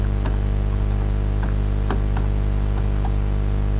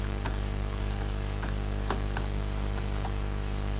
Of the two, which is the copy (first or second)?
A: second